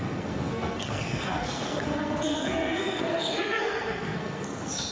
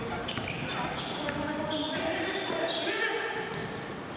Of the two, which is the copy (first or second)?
first